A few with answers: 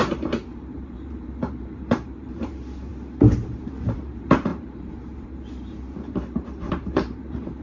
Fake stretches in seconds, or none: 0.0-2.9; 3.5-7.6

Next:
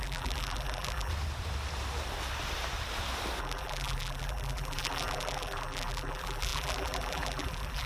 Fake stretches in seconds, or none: 0.0-1.1; 3.4-7.9

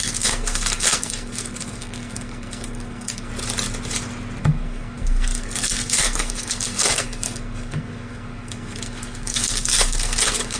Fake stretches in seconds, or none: 0.0-3.3; 4.4-10.6

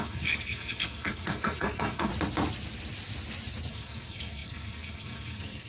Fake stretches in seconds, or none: 0.0-2.1; 3.7-5.7

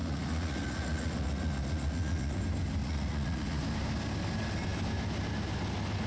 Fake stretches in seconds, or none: 0.0-2.4; 2.8-3.6

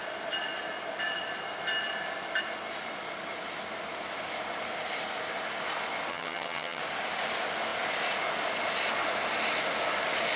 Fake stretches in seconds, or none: 6.1-6.8

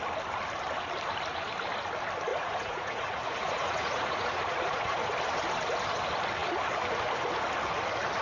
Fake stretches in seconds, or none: 2.3-5.1